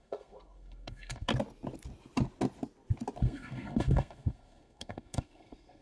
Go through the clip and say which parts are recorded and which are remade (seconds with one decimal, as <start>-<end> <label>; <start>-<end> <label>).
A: 0.0-1.3 remade; 1.3-3.2 recorded; 3.2-5.8 remade